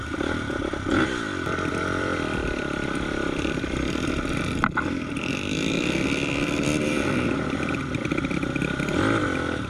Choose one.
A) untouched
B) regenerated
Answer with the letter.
B